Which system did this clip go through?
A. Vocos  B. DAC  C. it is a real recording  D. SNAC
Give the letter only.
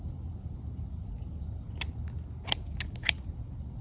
C